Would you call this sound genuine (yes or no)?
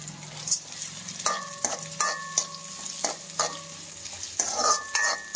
yes